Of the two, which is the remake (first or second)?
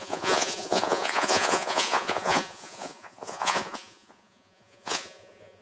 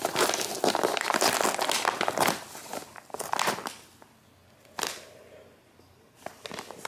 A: first